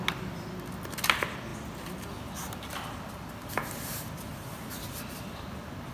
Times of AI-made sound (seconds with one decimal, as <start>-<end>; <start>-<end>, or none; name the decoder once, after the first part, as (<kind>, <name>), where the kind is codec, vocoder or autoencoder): none